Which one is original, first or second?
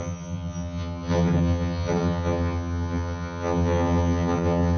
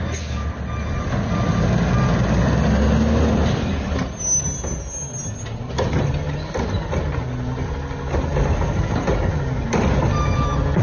second